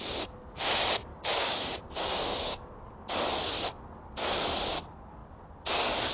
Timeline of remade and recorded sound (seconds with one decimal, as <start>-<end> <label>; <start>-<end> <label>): 0.0-1.1 recorded; 1.1-2.7 remade; 2.7-6.1 recorded